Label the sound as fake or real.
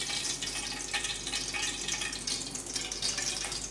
real